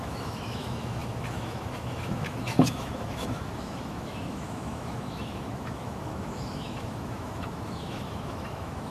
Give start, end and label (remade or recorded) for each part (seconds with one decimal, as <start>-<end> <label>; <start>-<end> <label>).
0.0-8.9 remade